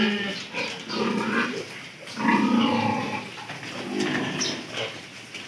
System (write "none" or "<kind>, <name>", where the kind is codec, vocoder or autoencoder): none